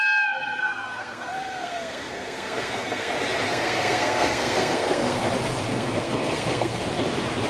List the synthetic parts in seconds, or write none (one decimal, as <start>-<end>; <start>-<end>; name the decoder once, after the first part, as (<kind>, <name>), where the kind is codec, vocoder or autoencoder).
0.6-3.1 (codec, SNAC); 3.5-5.3; 5.7-6.8